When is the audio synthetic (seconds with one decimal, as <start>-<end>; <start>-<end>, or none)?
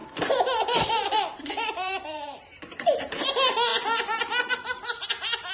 0.0-3.3